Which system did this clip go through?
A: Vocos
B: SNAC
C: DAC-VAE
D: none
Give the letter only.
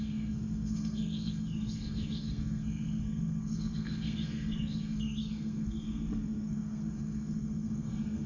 B